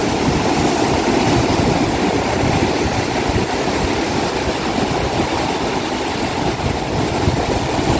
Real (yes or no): yes